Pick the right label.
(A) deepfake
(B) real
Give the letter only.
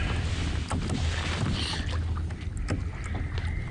B